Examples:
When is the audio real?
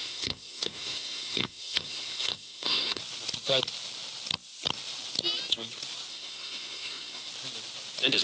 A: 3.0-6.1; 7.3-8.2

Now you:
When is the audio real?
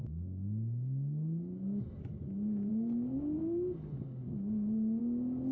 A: 0.0-5.5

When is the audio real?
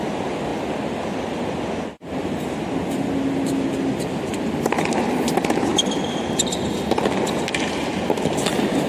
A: 0.0-8.9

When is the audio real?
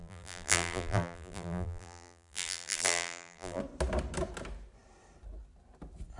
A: 3.6-6.2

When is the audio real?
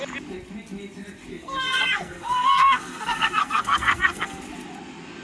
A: 0.0-1.3; 4.4-5.2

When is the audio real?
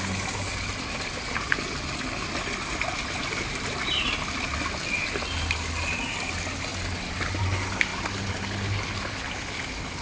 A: 0.0-10.0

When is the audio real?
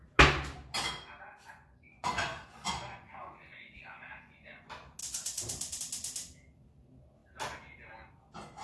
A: 0.0-1.4; 4.6-8.6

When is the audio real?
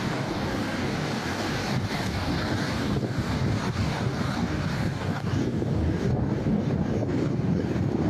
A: none